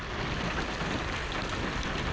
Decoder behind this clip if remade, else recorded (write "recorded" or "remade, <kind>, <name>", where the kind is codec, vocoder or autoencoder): recorded